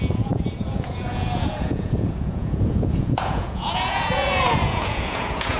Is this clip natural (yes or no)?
no